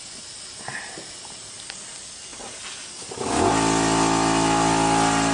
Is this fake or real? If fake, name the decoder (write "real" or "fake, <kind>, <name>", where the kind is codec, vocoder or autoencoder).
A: real